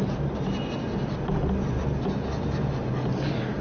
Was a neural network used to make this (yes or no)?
no